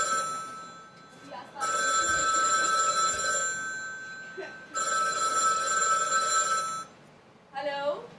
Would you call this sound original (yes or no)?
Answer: yes